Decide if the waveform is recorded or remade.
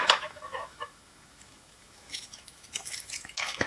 remade